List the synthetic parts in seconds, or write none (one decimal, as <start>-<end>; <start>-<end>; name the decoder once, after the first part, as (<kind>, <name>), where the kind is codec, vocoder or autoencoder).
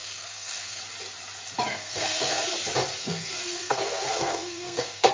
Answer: 0.0-0.8 (codec, SNAC); 1.7-2.4; 3.0-5.1